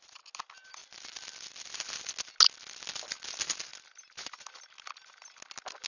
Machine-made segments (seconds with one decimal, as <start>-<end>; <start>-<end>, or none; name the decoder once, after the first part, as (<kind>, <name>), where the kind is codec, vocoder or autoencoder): none